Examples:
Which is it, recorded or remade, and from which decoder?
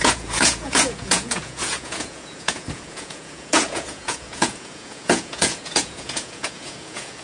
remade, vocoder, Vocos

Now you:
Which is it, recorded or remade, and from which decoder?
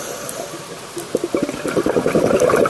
recorded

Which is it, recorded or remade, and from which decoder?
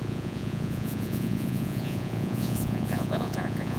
remade, vocoder, Vocos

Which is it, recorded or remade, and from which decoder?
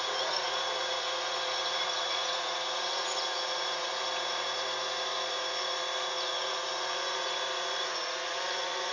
remade, vocoder, Vocos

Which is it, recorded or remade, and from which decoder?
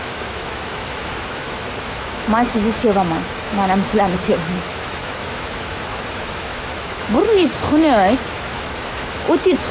remade, autoencoder, DAC-VAE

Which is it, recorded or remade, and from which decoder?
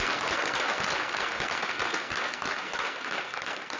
remade, codec, SNAC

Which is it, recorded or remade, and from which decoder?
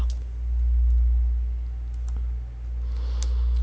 recorded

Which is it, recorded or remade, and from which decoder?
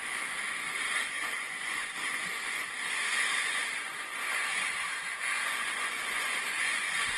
remade, vocoder, Vocos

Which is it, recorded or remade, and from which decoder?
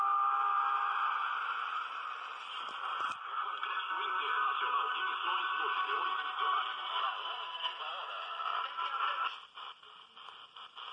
recorded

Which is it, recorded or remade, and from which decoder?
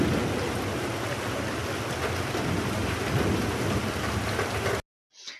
recorded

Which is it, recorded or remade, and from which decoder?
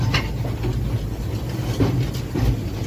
recorded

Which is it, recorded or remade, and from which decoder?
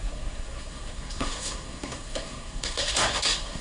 remade, codec, SNAC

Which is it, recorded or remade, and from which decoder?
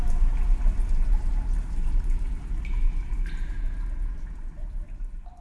recorded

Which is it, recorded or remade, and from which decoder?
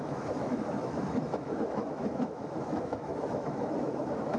remade, autoencoder, DAC-VAE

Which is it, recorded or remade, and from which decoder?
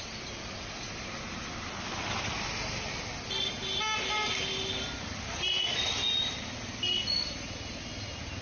recorded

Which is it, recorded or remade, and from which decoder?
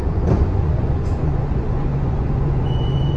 remade, vocoder, Vocos